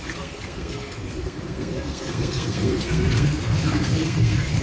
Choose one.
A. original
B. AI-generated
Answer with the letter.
B